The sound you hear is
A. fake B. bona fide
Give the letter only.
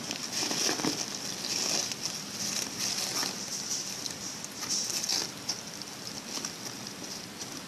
B